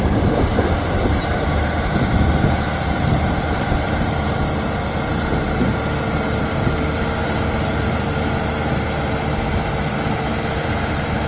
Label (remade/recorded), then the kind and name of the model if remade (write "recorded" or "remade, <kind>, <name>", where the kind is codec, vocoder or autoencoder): remade, vocoder, BigVGAN v2